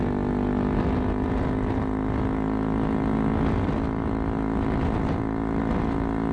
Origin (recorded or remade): recorded